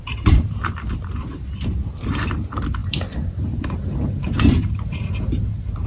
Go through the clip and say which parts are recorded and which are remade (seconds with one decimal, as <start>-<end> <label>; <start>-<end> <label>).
0.0-5.9 recorded